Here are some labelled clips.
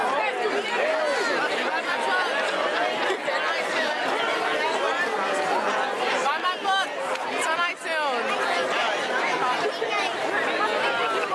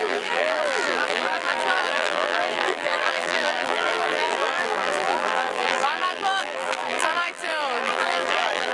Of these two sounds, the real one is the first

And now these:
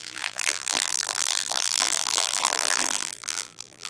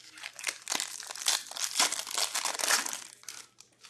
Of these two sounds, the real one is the second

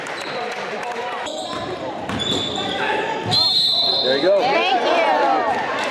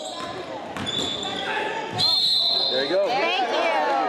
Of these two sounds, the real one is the second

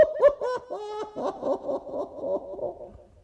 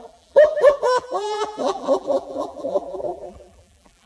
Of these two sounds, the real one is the first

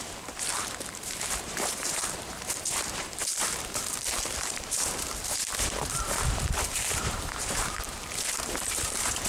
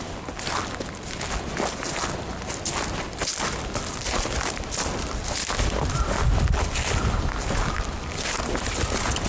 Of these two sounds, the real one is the second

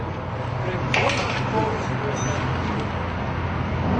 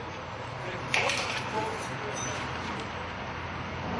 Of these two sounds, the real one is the first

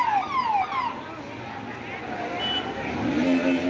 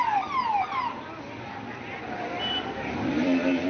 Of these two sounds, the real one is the first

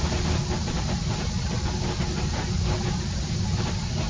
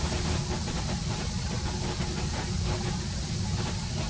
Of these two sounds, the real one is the second